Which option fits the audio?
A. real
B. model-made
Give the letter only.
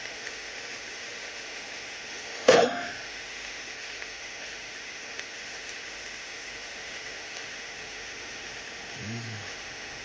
B